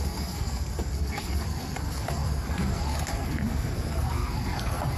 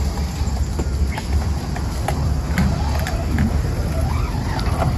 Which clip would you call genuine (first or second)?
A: second